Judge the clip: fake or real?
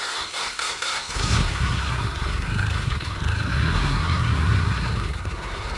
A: fake